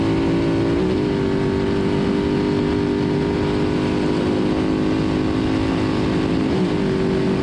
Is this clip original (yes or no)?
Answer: yes